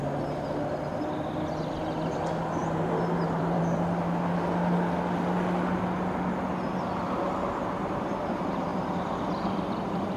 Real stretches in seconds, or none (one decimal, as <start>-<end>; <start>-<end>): 0.0-2.6; 3.6-8.7; 9.2-10.2